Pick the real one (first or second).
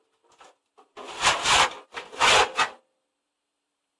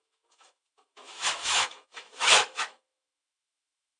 first